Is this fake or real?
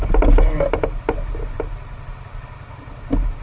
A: real